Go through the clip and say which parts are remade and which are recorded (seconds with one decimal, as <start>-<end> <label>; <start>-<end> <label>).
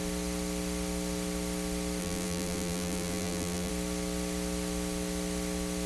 0.0-2.0 recorded; 2.0-3.7 remade; 3.7-5.9 recorded